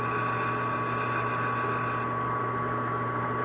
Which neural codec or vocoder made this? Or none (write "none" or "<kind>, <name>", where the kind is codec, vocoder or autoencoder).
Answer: none